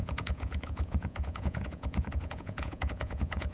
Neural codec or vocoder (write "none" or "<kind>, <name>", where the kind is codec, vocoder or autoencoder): vocoder, Vocos